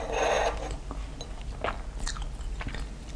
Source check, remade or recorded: recorded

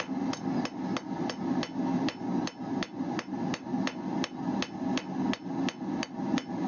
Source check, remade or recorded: recorded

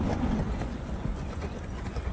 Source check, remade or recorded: remade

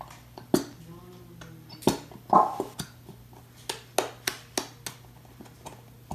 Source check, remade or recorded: recorded